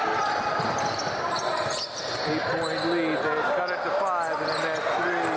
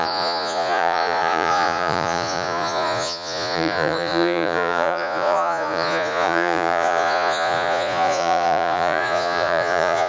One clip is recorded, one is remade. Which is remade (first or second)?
second